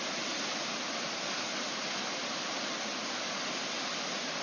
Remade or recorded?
recorded